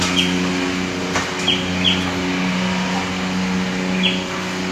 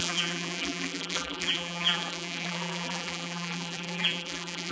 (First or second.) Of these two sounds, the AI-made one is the second